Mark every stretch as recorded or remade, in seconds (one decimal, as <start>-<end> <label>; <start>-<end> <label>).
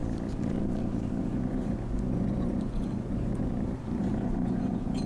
0.0-1.2 recorded; 1.2-3.5 remade; 3.5-4.0 recorded; 4.0-5.1 remade